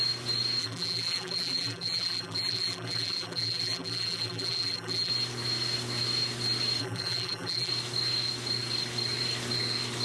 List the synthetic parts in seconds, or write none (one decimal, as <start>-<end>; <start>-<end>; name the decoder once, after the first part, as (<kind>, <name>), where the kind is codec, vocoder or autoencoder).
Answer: 0.6-5.1 (vocoder, BigVGAN v2); 6.8-7.7

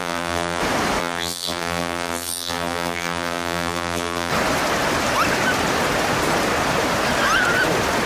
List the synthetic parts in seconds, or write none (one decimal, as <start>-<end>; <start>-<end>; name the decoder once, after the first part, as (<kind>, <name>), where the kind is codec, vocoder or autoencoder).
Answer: 0.0-0.6 (vocoder, BigVGAN v2); 1.0-4.3

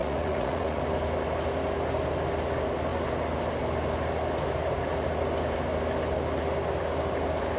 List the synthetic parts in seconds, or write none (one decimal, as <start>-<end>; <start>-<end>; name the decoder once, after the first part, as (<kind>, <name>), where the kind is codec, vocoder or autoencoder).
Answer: 0.0-0.8 (vocoder, Vocos)

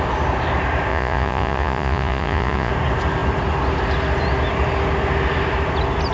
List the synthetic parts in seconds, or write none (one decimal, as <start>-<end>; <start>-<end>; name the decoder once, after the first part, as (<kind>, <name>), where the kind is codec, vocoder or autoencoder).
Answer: 0.9-2.7 (vocoder, Vocos)

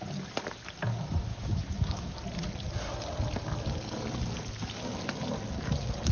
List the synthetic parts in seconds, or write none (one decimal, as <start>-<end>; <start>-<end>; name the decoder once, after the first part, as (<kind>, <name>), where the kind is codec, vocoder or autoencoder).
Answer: 1.3-2.1 (autoencoder, DAC-VAE)